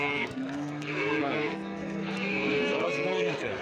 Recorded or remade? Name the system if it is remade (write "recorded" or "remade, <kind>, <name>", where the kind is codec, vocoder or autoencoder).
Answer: remade, codec, SNAC